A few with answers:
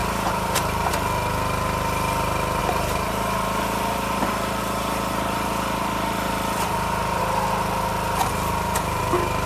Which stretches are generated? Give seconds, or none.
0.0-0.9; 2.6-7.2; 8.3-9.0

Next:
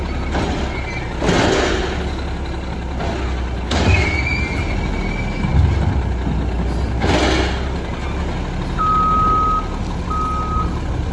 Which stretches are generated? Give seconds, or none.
0.0-0.6

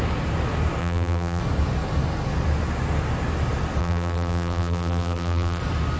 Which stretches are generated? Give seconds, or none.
0.8-1.4; 3.8-5.6

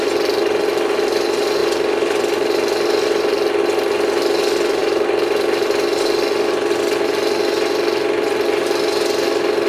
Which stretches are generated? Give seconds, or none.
none

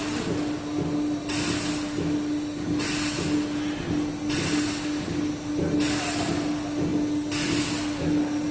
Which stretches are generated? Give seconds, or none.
none

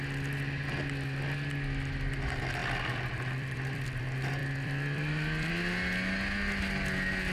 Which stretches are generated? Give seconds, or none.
2.6-4.0; 4.4-5.5